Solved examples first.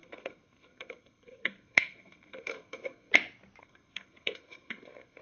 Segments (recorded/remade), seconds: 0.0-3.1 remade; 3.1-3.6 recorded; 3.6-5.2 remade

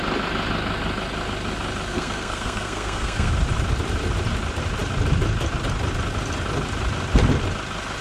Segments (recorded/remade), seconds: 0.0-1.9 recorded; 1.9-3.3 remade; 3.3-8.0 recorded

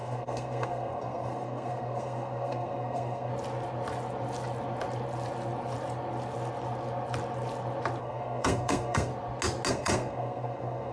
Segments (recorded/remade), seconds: 0.0-3.3 remade; 3.3-8.0 recorded; 8.0-9.1 remade; 9.1-9.7 recorded; 9.7-10.9 remade

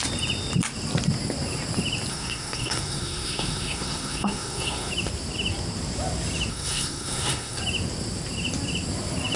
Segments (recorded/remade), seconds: 0.0-2.1 recorded; 2.1-4.9 remade; 4.9-6.5 recorded; 6.5-7.6 remade; 7.6-9.4 recorded

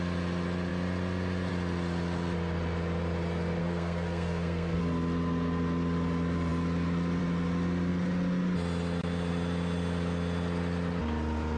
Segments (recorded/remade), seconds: 0.0-3.6 recorded; 3.6-4.8 remade; 4.8-11.6 recorded

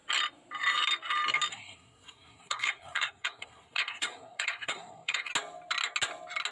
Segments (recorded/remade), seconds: 0.0-1.5 recorded; 1.5-5.3 remade; 5.3-6.5 recorded